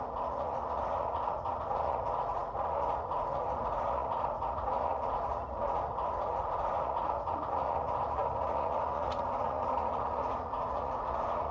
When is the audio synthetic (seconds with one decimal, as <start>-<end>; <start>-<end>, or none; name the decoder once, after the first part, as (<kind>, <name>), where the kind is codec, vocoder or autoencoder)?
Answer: 0.0-11.5 (vocoder, Vocos)